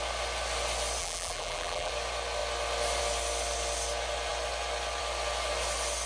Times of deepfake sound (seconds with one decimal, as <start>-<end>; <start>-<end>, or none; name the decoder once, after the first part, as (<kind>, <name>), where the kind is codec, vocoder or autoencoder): 1.0-1.9 (vocoder, BigVGAN v2)